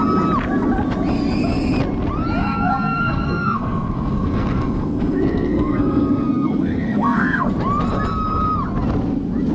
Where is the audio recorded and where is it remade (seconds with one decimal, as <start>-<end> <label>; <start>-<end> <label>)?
0.0-2.4 recorded; 2.4-7.5 remade; 7.5-9.5 recorded